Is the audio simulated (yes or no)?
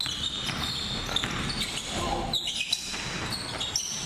no